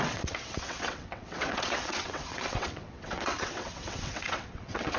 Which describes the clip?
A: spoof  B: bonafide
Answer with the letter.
A